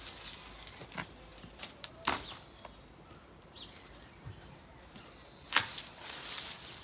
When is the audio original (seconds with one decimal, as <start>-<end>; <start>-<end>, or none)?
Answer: 0.0-6.8